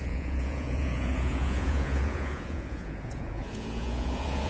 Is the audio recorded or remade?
remade